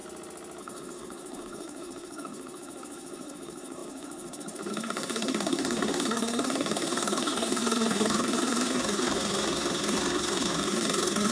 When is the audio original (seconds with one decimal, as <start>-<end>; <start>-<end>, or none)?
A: 0.0-0.6